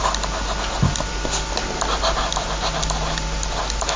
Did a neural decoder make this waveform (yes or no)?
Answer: no